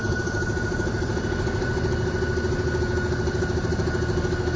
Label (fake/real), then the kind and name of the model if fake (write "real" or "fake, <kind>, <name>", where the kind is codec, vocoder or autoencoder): real